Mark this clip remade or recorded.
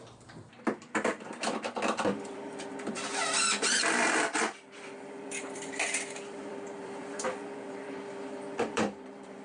remade